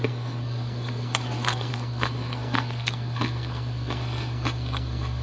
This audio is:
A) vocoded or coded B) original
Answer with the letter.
A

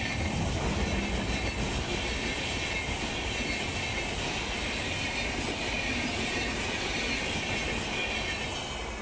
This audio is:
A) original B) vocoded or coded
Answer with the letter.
A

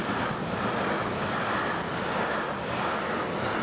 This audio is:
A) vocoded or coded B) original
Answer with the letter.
B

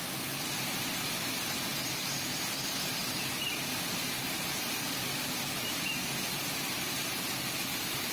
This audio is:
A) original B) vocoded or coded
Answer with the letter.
A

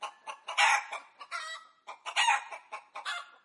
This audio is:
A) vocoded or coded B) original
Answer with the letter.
B